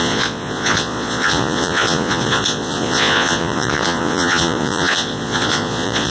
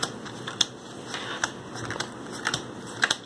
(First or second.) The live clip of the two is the second